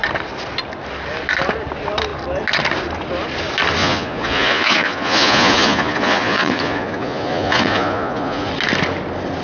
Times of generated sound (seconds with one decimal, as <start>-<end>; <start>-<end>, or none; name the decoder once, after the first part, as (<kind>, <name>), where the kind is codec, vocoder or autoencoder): 3.8-8.5 (vocoder, Vocos)